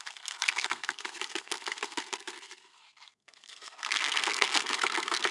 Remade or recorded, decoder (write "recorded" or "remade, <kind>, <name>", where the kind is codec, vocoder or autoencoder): remade, codec, SNAC